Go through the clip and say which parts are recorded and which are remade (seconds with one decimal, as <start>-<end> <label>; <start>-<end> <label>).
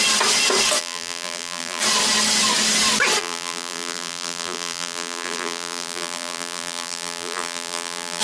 0.0-0.8 recorded; 0.8-1.8 remade; 1.8-3.2 recorded; 3.2-8.2 remade